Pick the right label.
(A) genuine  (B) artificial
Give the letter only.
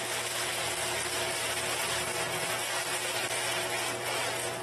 A